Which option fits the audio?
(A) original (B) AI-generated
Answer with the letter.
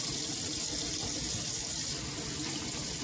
A